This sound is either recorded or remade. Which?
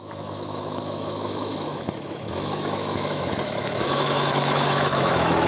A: remade